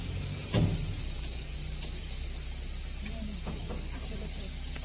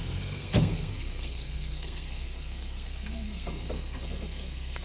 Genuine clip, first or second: first